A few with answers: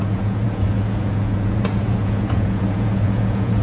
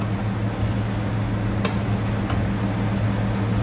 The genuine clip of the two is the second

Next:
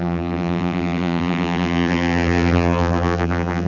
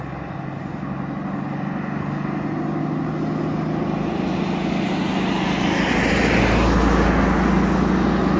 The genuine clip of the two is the second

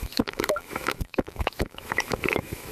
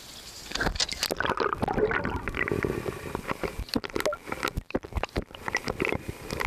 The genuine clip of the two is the second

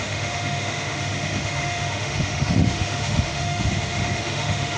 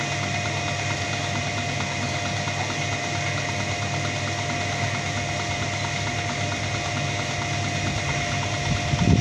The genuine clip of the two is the second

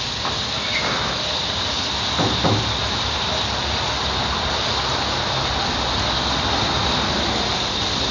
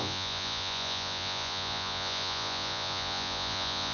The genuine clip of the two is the first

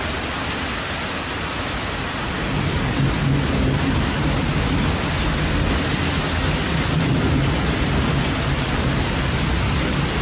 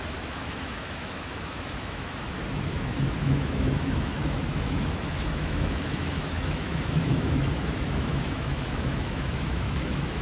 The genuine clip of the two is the first